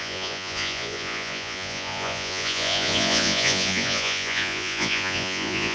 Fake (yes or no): yes